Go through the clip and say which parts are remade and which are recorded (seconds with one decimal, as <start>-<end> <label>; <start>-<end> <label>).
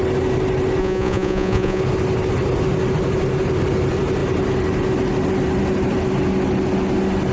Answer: 0.0-0.8 recorded; 0.8-1.8 remade; 1.8-7.3 recorded